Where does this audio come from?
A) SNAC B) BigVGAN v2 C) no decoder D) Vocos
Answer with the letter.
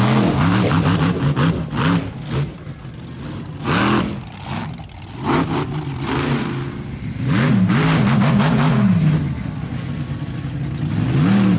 C